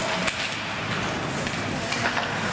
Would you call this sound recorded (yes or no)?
yes